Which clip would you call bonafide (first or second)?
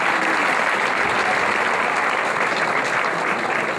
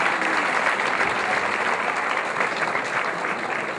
first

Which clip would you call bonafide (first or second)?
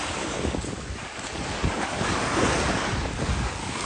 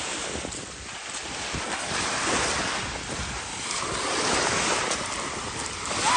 second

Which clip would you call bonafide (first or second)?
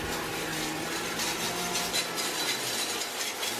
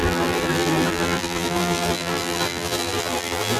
first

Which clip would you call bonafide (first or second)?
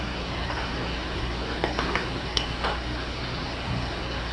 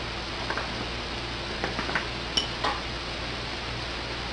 second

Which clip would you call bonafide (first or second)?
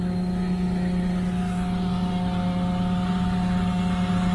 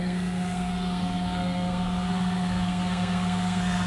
first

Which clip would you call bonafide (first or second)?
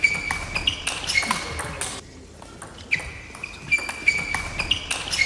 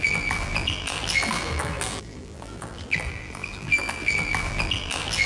first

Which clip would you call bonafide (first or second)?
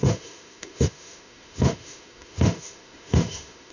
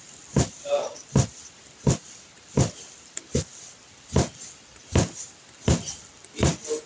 second